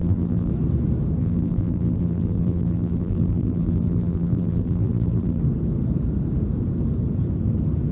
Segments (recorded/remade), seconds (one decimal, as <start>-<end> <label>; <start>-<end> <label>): 0.0-0.5 remade; 0.5-1.2 recorded; 1.2-5.4 remade; 5.4-7.9 recorded